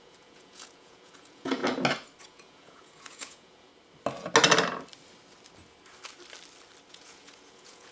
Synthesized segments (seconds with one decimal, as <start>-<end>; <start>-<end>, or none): 0.0-1.6; 2.2-3.7; 6.9-7.9